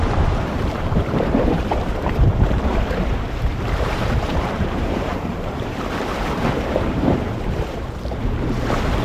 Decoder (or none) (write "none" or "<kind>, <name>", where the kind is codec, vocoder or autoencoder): vocoder, BigVGAN v2